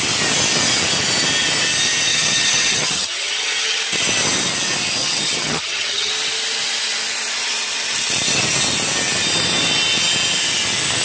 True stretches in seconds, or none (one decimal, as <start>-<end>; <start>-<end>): 0.0-2.1; 3.8-5.0; 6.1-11.0